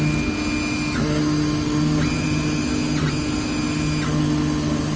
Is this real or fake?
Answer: real